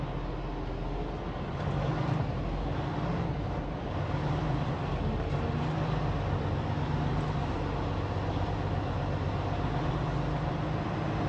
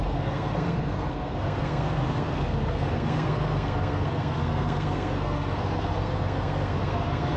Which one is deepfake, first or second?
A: second